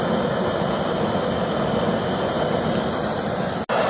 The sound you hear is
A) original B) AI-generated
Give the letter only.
A